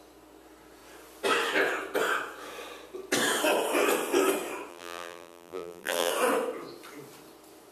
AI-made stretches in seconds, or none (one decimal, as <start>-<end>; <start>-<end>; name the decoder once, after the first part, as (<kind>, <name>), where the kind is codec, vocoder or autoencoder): 4.7-6.1 (vocoder, BigVGAN v2)